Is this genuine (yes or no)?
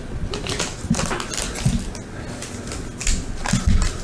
yes